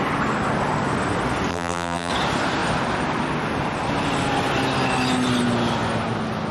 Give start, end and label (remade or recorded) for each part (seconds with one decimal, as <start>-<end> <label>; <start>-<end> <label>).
0.0-1.5 recorded; 1.5-2.1 remade; 2.1-6.5 recorded